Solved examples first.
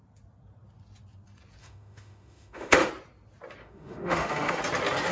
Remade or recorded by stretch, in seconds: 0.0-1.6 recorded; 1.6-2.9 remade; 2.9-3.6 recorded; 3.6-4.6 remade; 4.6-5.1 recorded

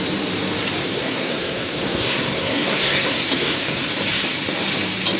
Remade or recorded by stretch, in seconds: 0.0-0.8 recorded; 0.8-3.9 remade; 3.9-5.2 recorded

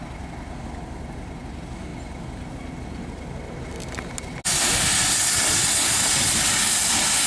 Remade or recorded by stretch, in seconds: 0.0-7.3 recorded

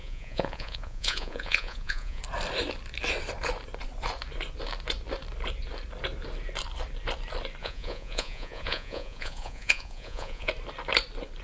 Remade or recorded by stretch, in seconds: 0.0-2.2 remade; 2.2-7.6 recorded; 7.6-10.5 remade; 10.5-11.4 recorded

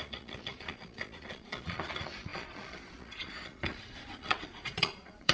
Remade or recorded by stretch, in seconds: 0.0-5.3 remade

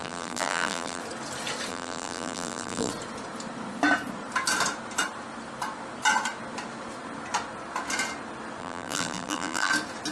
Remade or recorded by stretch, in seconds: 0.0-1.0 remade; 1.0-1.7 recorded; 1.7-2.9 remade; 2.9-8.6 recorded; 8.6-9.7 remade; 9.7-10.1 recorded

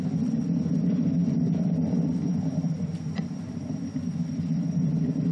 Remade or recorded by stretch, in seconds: 0.0-5.3 remade

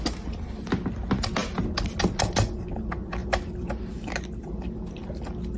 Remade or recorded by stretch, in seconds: 0.0-5.6 recorded